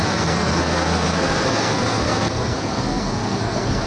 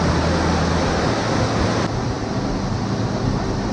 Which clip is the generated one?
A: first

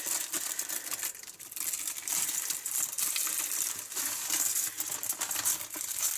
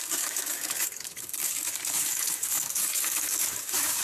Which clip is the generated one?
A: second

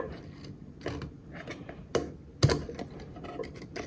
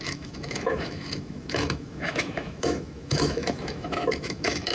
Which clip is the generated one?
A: second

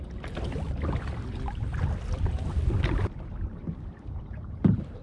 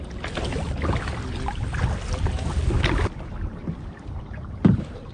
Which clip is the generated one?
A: first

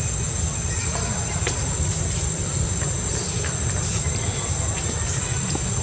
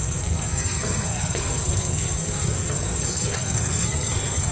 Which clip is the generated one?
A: second